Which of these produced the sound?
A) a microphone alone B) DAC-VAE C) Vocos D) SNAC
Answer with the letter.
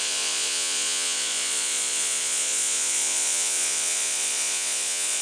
C